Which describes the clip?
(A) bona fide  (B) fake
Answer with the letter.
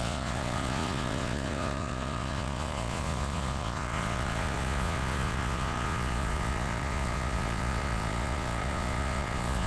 B